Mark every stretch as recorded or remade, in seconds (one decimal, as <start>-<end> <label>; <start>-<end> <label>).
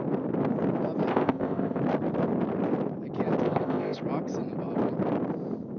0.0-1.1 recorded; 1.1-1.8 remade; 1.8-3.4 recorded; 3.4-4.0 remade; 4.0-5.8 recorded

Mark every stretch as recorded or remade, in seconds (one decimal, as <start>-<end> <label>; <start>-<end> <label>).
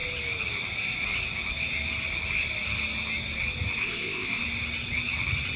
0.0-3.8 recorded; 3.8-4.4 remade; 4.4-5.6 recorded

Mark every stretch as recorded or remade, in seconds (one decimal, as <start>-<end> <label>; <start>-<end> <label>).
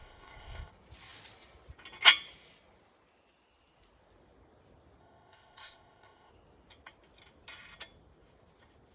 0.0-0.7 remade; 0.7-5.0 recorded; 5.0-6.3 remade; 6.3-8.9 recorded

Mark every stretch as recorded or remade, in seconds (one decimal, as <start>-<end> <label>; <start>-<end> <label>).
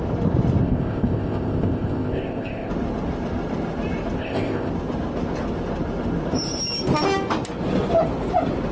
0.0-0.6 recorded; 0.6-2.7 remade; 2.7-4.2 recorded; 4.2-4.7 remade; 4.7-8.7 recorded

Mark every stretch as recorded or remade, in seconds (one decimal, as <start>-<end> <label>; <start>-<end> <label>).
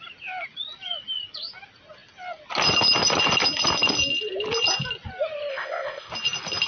0.0-5.5 recorded; 5.5-6.1 remade; 6.1-6.7 recorded